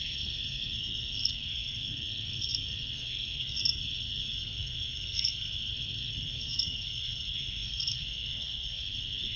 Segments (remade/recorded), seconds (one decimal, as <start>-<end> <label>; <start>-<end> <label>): 0.0-9.4 remade